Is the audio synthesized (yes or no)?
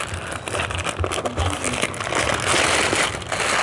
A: no